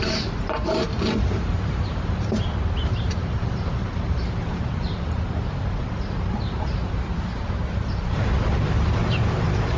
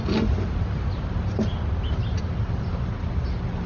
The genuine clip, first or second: second